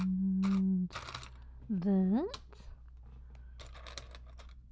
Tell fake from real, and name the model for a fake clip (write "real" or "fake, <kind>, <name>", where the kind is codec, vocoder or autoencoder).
real